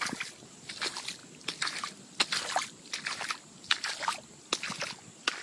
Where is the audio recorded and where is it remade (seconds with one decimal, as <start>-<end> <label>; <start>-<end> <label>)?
0.0-1.2 recorded; 1.2-4.4 remade; 4.4-5.4 recorded